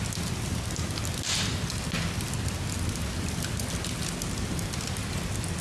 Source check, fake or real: real